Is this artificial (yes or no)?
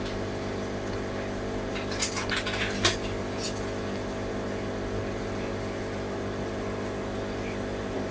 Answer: no